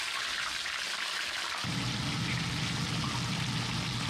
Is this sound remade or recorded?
recorded